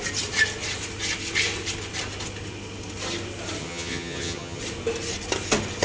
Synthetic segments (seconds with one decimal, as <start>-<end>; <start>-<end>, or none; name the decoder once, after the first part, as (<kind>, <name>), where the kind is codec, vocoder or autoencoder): 3.6-4.6 (vocoder, HiFi-GAN)